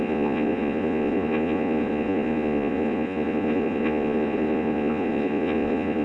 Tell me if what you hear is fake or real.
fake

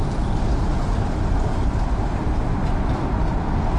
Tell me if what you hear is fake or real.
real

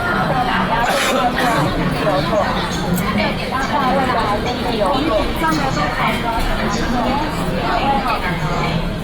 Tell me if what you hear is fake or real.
fake